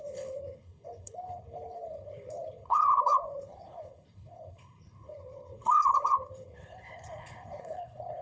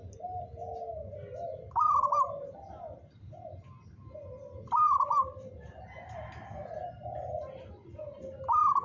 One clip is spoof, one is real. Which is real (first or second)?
second